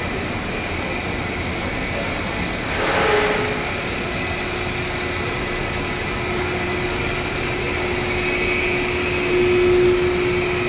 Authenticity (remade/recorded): recorded